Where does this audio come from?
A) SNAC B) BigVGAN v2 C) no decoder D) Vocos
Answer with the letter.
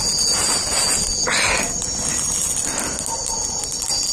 C